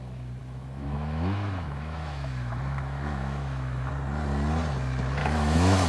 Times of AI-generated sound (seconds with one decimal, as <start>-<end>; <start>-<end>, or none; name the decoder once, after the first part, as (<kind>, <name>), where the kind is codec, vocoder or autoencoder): 0.4-3.9 (autoencoder, DAC-VAE); 5.2-5.9